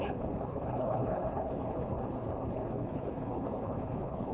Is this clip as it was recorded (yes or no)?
no